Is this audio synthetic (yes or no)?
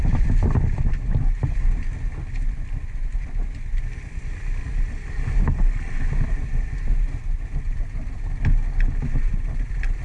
no